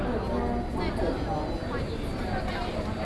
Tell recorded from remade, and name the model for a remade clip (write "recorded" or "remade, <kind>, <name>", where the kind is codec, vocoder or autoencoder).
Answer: recorded